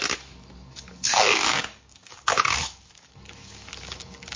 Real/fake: fake